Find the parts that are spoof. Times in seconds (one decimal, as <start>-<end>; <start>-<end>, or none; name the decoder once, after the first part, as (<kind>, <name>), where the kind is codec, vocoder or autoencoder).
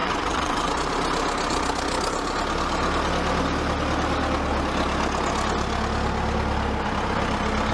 0.0-0.7 (vocoder, WaveNeXt)